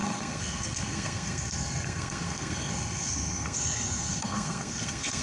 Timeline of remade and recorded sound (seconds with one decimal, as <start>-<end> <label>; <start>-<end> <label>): 0.0-5.2 remade